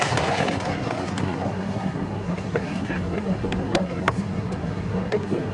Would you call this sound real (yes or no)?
no